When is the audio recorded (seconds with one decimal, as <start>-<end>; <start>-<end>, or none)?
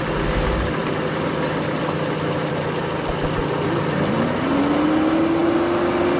0.0-6.2